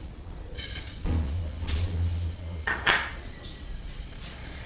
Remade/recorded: remade